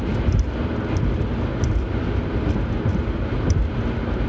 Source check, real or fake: real